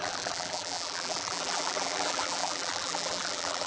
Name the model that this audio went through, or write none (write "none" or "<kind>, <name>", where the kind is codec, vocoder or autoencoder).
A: vocoder, BigVGAN v2